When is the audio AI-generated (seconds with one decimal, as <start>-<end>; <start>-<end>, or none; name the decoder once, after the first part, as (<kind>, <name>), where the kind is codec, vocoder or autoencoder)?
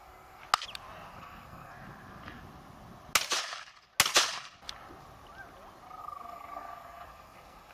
0.0-0.4 (codec, SNAC); 1.1-1.7; 6.0-7.7